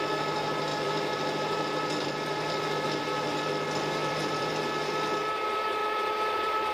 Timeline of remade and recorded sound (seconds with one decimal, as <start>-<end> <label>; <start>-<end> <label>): 0.0-0.7 recorded; 0.7-3.5 remade; 3.5-4.0 recorded; 4.0-4.7 remade; 4.7-5.8 recorded; 5.8-6.7 remade